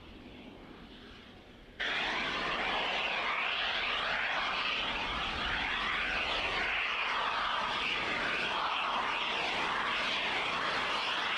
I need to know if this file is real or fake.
real